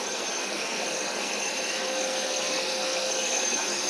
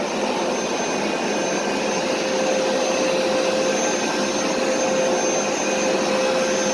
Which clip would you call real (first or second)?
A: second